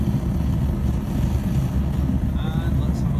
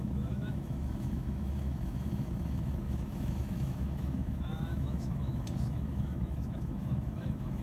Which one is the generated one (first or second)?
second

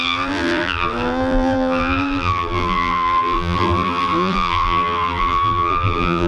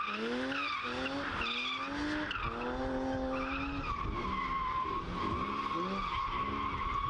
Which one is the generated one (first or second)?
first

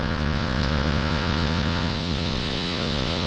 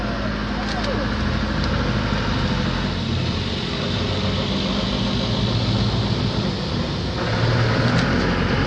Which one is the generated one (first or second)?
first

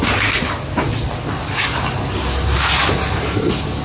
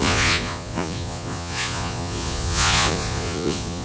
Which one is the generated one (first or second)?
second